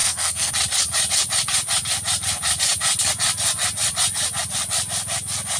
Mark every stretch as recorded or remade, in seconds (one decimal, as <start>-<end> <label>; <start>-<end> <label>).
0.0-0.5 remade; 0.5-5.6 recorded